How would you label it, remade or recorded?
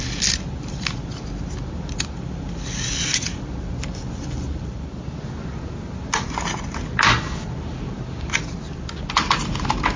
recorded